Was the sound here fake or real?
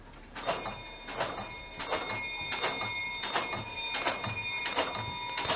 real